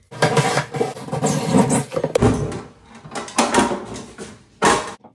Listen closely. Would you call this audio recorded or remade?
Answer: recorded